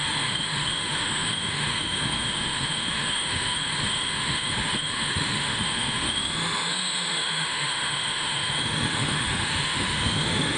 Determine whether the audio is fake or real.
fake